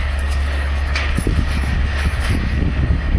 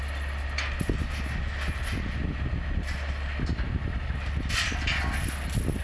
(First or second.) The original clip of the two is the second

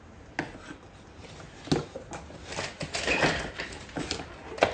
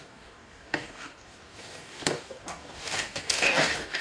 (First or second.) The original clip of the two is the first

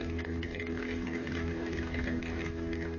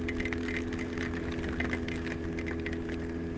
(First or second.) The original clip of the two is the second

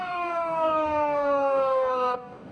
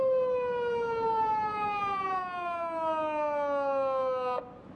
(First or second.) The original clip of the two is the second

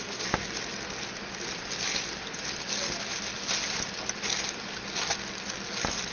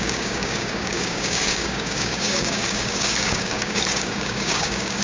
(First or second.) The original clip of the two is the first